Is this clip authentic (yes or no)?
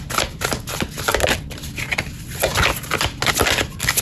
yes